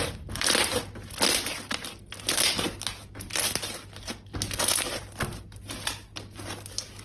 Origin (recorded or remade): recorded